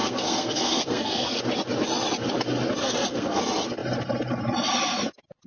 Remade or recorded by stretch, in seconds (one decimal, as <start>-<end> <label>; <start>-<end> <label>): 0.0-1.4 remade; 1.4-2.8 recorded; 2.8-3.4 remade; 3.4-5.5 recorded